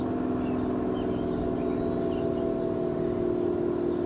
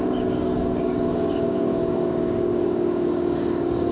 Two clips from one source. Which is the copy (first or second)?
second